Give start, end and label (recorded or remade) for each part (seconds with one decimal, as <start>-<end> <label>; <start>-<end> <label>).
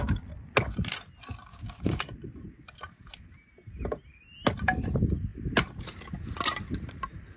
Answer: 0.0-1.5 recorded; 1.5-2.0 remade; 2.0-7.4 recorded